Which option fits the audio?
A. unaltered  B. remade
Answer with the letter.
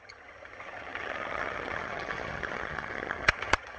B